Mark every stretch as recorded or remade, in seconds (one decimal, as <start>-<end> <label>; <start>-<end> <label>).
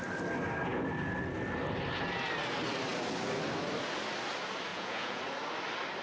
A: 0.0-4.7 recorded; 4.7-5.2 remade; 5.2-6.0 recorded